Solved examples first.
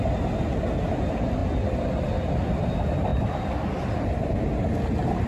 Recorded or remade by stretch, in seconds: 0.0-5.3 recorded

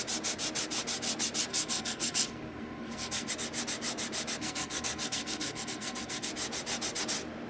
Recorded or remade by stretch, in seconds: 0.0-1.5 recorded; 1.5-3.3 remade; 3.3-4.4 recorded; 4.4-6.3 remade; 6.3-7.5 recorded